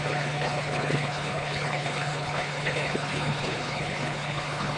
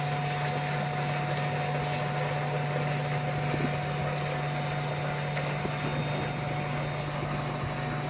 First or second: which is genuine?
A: second